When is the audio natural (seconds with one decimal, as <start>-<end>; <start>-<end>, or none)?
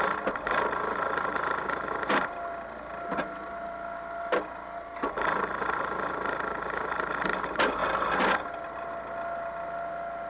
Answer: 0.0-10.3